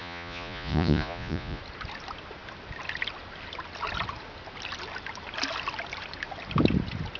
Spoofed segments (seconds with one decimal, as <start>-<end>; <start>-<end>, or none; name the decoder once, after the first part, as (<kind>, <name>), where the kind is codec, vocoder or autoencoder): 0.0-1.6 (vocoder, Vocos)